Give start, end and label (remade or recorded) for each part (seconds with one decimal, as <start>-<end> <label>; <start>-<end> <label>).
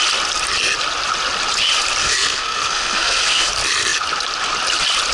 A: 0.0-2.0 recorded; 2.0-3.5 remade; 3.5-5.1 recorded